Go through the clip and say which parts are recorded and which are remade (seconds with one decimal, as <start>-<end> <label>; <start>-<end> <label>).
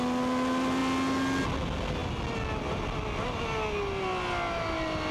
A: 0.0-5.1 recorded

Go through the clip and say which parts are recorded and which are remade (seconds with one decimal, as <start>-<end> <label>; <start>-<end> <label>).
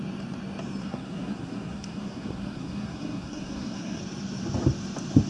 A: 0.0-0.8 recorded; 0.8-4.0 remade; 4.0-5.3 recorded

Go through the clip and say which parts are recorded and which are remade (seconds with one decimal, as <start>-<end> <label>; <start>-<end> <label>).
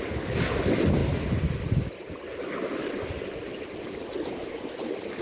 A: 0.0-5.2 recorded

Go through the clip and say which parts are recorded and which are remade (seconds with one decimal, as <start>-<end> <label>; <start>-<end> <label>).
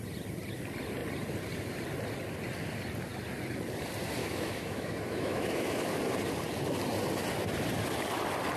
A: 0.0-4.2 recorded; 4.2-6.0 remade; 6.0-8.6 recorded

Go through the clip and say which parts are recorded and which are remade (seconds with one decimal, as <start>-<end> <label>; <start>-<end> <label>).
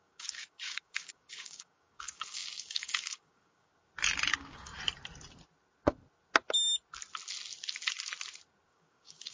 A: 0.0-3.7 remade; 3.7-4.3 recorded; 4.3-4.7 remade; 4.7-8.7 recorded; 8.7-9.3 remade